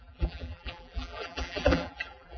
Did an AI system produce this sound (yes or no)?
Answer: yes